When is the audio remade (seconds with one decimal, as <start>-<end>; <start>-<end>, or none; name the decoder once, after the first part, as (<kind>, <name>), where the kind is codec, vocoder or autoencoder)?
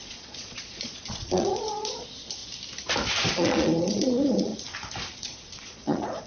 0.0-2.4 (vocoder, Vocos); 3.3-4.5; 5.2-6.3